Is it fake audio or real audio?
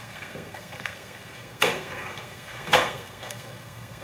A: fake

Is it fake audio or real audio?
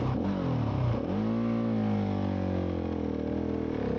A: real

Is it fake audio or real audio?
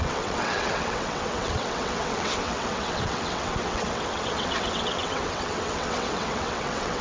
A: fake